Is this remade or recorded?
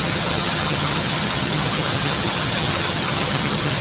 remade